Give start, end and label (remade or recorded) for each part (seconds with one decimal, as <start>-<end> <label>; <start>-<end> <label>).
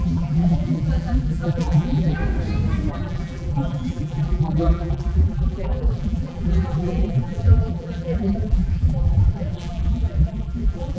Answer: 0.0-2.2 remade; 2.2-2.9 recorded; 2.9-11.0 remade